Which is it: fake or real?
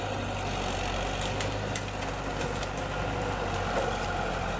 real